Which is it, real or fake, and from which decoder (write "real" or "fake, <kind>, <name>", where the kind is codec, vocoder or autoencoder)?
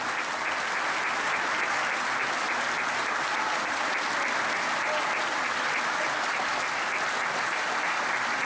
real